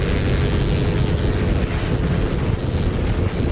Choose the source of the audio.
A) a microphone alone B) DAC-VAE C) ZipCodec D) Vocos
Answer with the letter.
A